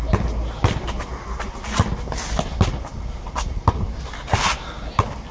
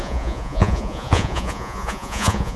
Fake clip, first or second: second